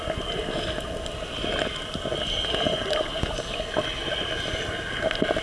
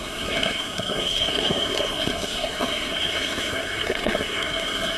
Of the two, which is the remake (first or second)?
second